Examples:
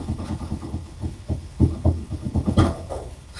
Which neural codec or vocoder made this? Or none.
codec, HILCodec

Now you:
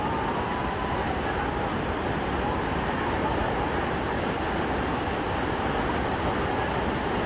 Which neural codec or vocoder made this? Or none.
vocoder, BigVGAN v2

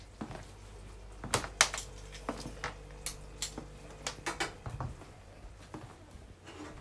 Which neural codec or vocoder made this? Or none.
none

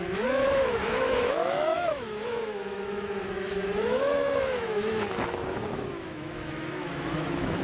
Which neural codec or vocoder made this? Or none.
autoencoder, DAC-VAE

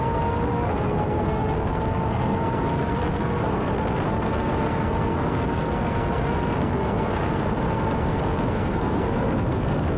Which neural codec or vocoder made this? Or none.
codec, SNAC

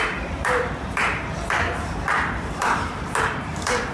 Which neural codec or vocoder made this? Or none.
vocoder, BigVGAN v2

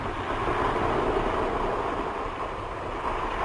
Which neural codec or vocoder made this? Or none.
none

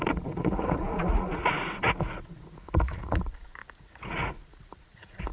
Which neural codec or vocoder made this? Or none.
vocoder, Vocos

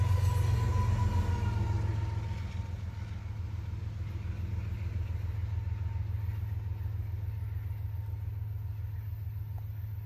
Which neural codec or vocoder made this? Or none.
none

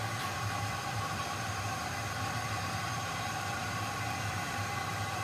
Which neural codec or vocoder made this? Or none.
vocoder, BigVGAN v2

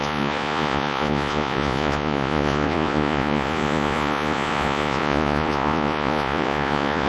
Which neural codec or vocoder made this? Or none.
vocoder, Vocos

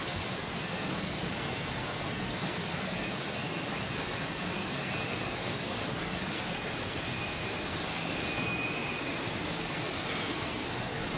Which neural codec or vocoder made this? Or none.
codec, SNAC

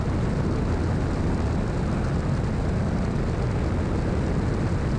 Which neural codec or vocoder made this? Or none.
none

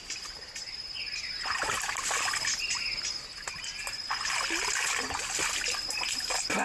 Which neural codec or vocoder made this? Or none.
none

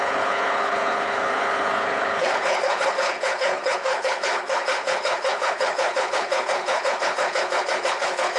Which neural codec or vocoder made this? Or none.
codec, HILCodec